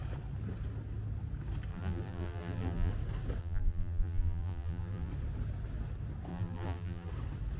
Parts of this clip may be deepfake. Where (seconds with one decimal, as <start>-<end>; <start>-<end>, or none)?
1.7-2.9; 3.4-5.1; 6.3-7.1